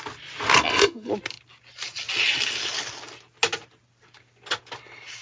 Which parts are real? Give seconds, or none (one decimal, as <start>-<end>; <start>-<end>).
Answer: 0.0-0.6; 1.1-5.2